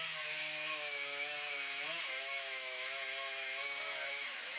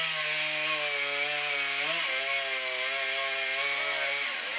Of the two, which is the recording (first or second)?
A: second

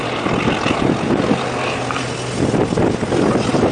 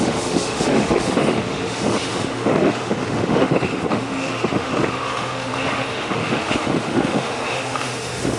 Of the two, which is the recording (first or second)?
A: first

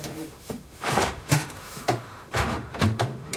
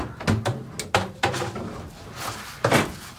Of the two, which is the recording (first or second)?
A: second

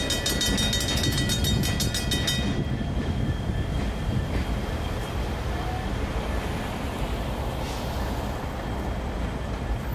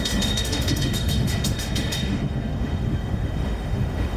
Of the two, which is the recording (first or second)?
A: first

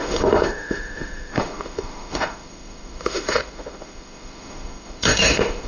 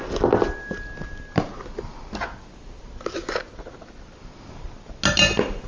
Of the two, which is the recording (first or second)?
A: second